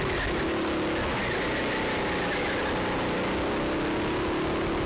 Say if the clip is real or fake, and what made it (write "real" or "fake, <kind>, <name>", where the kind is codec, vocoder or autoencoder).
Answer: real